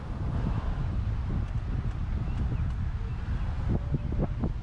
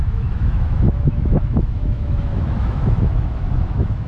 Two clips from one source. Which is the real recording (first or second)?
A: first